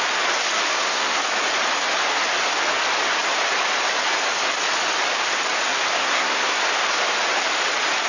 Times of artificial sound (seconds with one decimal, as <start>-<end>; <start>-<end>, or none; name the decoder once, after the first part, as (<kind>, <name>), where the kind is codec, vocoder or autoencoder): 0.7-1.2 (codec, SNAC); 6.0-6.6